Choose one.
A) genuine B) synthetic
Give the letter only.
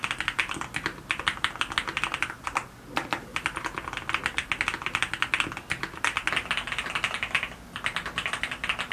A